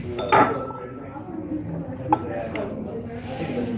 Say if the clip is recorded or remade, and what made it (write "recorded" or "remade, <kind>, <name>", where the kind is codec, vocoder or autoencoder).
recorded